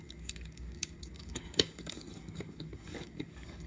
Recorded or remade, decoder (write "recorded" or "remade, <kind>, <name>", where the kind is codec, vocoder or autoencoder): remade, codec, DAC